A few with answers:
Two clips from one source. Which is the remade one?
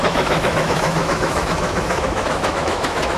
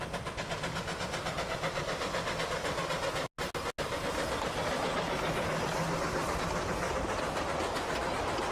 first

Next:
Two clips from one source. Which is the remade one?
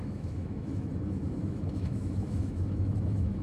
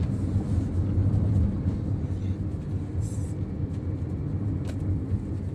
first